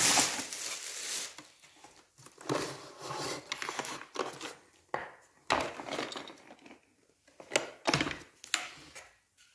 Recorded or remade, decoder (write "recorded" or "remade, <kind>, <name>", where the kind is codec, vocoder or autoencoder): recorded